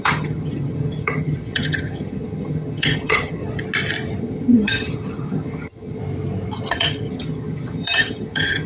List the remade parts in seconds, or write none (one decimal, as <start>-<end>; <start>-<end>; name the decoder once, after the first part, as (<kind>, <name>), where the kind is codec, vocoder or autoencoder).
0.0-3.4 (vocoder, HiFi-GAN); 4.2-6.0; 6.7-8.7